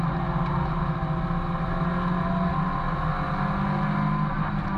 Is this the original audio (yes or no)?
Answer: yes